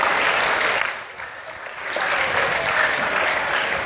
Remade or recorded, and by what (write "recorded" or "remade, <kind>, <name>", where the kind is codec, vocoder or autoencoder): recorded